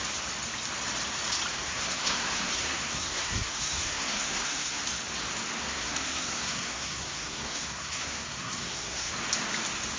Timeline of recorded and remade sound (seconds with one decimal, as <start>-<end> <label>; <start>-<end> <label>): 0.0-1.5 recorded; 1.5-4.8 remade; 4.8-5.6 recorded; 5.6-9.1 remade; 9.1-10.0 recorded